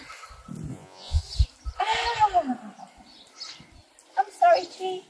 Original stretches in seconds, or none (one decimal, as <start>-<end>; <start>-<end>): 0.0-0.7; 1.2-5.1